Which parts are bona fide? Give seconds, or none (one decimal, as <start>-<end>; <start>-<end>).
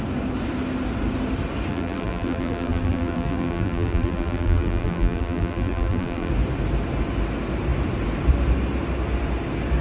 0.0-1.7; 6.3-9.8